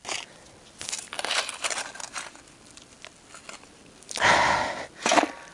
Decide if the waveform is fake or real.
real